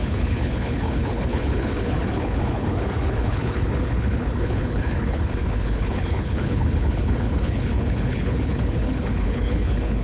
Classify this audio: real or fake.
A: fake